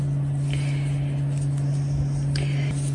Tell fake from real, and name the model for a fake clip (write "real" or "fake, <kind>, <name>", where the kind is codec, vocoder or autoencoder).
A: real